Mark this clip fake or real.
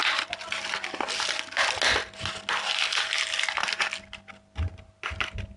real